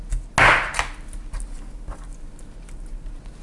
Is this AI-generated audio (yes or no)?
no